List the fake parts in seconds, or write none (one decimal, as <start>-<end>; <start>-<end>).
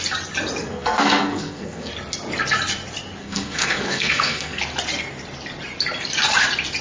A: 0.6-1.9; 3.2-4.6